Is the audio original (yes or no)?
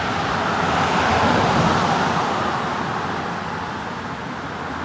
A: yes